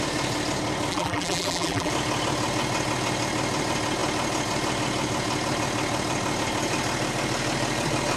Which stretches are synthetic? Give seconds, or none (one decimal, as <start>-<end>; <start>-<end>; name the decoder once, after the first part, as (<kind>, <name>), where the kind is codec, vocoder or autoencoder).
0.9-1.9 (vocoder, BigVGAN v2)